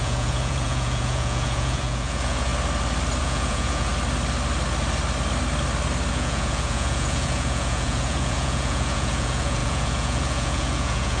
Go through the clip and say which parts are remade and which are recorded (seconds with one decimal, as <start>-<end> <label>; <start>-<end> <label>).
0.0-2.5 remade; 2.5-3.2 recorded; 3.2-3.9 remade; 3.9-6.1 recorded; 6.1-11.2 remade